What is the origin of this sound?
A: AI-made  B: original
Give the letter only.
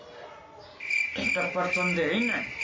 B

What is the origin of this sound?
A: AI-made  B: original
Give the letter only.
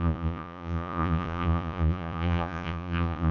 A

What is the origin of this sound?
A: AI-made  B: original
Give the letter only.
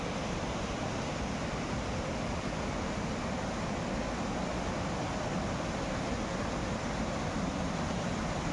B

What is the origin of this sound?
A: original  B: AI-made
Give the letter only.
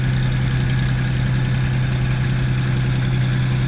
A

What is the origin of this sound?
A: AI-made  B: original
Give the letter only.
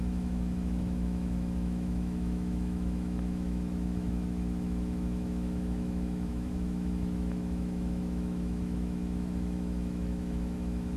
A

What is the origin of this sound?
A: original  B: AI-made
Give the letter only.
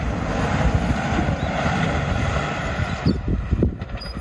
B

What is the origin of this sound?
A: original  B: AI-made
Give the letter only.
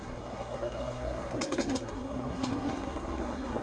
B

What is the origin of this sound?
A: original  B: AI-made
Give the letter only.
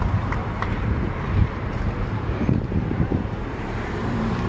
B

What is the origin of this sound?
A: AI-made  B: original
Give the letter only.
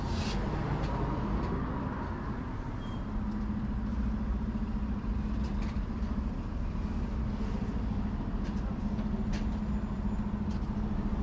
B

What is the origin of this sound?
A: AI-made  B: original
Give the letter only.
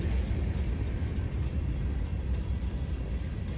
A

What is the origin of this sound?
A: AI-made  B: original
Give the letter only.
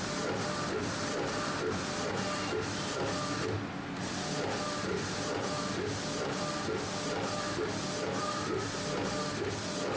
B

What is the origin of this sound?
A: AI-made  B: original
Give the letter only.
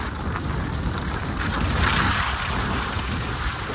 B